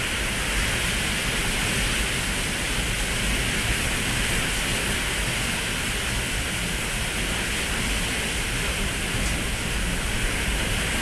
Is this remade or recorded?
recorded